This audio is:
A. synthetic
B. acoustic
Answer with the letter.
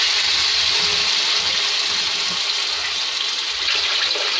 B